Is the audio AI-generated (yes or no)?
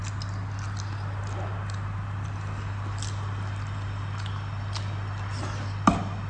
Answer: no